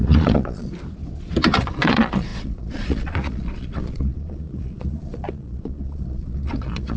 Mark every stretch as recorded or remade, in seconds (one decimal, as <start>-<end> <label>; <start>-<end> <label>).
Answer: 0.0-0.7 remade; 0.7-1.6 recorded; 1.6-7.0 remade